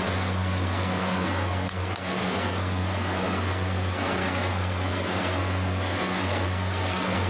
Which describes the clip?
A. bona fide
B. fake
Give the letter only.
B